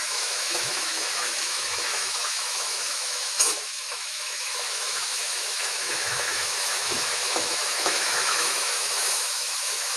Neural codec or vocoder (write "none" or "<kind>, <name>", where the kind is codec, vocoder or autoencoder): autoencoder, DAC-VAE